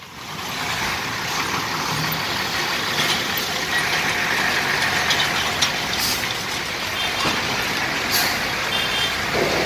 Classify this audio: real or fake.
real